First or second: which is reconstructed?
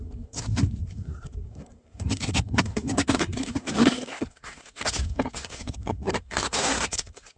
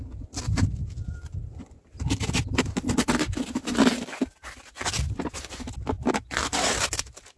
first